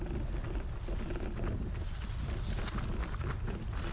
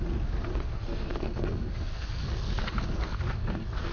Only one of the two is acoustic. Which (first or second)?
first